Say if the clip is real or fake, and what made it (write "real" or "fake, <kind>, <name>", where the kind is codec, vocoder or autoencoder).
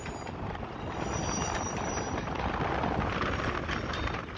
real